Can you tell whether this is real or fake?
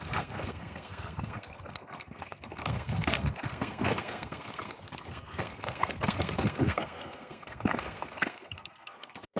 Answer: fake